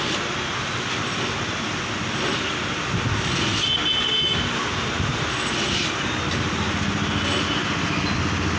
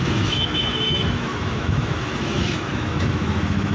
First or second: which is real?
first